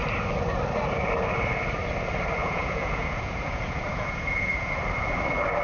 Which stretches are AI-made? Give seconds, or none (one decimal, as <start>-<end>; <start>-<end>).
2.4-4.7